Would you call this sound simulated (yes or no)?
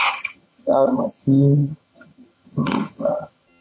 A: yes